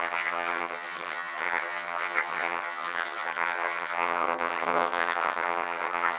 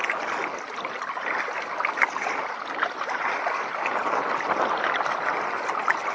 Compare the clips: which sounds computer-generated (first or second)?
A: first